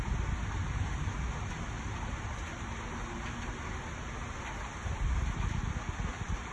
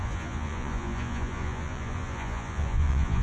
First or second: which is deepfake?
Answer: second